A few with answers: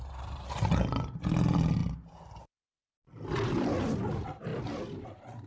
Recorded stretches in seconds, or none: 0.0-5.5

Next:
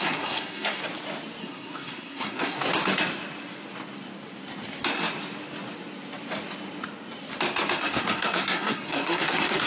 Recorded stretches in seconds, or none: 0.8-1.4; 2.7-7.8

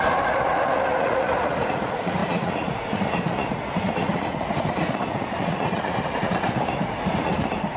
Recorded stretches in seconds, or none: none

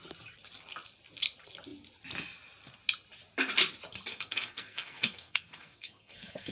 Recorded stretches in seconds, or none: 0.0-4.1

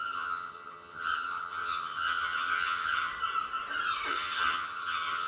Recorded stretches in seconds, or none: 3.1-4.1

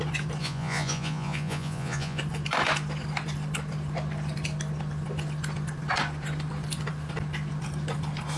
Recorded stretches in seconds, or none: 0.0-0.4; 2.2-8.4